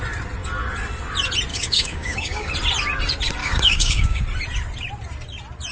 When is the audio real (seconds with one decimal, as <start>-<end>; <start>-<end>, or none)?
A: 0.0-1.5; 2.5-3.4; 4.2-5.7